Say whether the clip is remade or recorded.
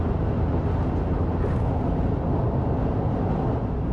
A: recorded